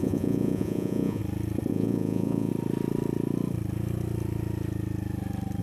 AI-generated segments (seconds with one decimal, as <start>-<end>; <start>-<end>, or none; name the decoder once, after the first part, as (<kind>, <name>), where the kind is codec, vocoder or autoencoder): 0.0-1.2 (vocoder, Vocos); 1.7-2.5